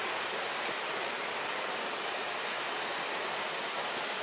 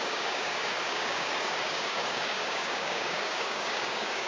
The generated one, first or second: second